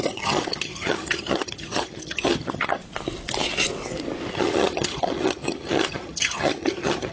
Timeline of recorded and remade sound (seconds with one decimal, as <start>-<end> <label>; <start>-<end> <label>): 0.0-2.8 remade; 2.8-4.3 recorded; 4.3-7.1 remade